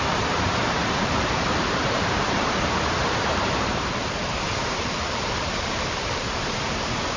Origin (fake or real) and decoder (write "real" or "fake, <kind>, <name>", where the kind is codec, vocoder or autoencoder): fake, vocoder, BigVGAN v2